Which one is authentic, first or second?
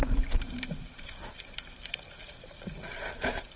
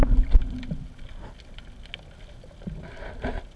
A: second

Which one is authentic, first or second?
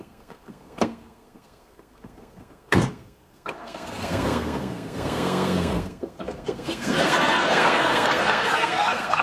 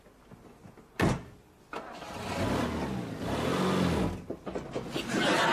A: second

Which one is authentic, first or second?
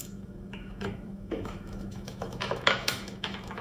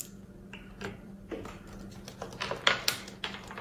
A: second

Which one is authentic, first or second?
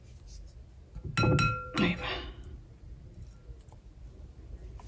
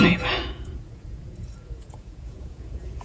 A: first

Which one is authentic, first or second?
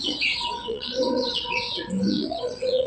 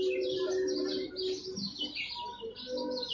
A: second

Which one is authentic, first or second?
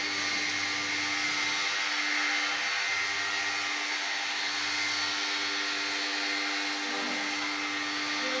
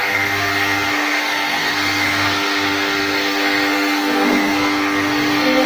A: first